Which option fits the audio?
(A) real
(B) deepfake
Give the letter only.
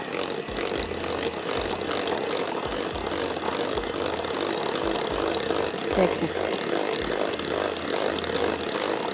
A